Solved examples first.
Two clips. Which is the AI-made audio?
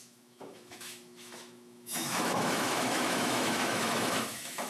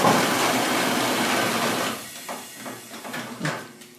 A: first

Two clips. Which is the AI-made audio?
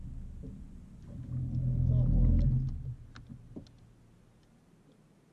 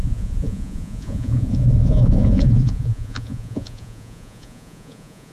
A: second